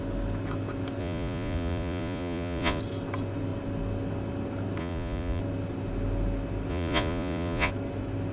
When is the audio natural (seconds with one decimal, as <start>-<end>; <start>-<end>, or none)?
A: 0.0-1.0; 2.8-4.8; 5.4-6.7; 7.7-8.3